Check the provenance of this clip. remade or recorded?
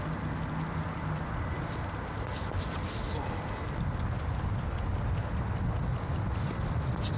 recorded